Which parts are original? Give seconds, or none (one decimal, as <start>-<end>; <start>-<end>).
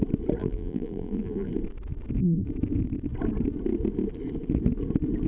0.0-0.4; 1.5-5.3